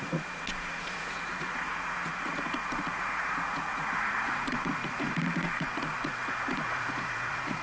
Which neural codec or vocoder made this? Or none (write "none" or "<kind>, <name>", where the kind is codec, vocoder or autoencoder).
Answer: vocoder, Vocos